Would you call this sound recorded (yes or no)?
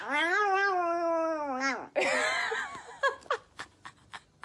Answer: yes